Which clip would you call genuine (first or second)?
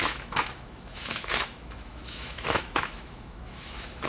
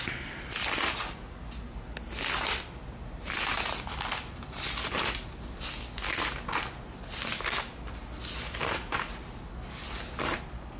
second